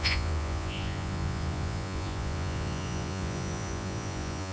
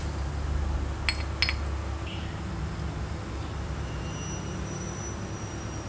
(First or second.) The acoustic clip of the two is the second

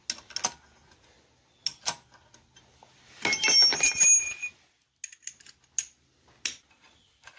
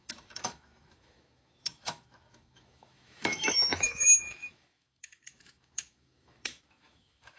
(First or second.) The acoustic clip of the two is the first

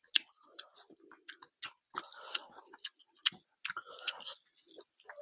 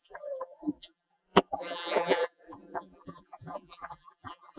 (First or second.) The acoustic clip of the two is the first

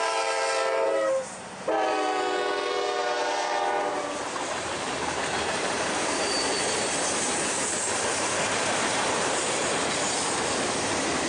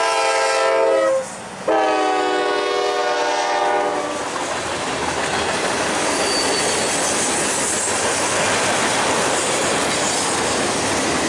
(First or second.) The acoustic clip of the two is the second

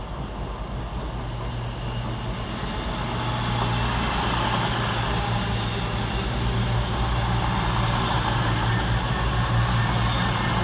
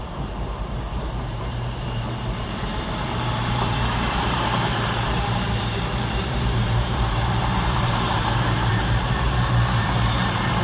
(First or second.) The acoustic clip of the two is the first